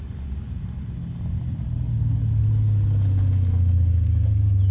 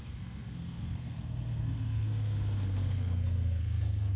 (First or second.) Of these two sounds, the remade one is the second